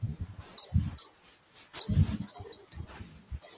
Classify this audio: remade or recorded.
recorded